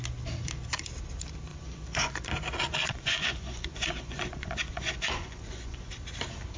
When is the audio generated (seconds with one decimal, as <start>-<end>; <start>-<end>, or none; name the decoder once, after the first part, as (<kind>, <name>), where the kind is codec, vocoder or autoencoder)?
1.5-2.3 (vocoder, Vocos); 2.9-5.9